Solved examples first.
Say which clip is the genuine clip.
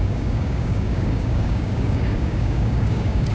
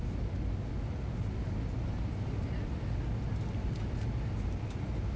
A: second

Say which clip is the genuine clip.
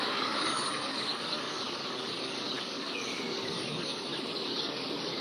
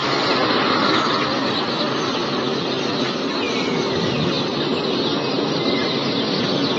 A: second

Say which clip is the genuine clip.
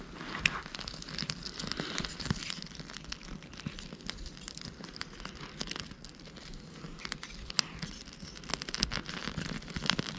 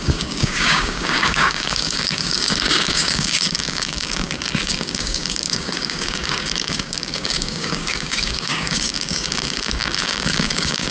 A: first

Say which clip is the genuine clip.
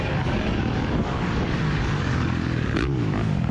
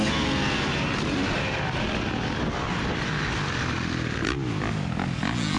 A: second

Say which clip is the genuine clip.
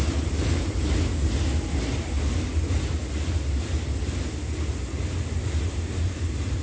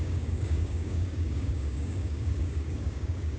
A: first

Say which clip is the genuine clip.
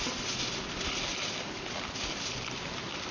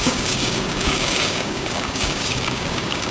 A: first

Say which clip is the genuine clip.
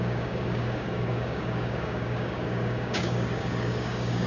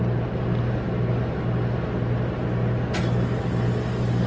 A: second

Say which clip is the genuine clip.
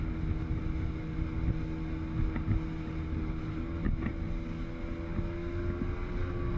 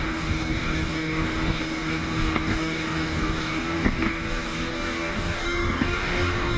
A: first